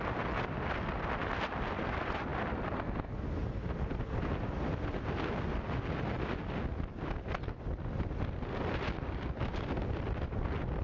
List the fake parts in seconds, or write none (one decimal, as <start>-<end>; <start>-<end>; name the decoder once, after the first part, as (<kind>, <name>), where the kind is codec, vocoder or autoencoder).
none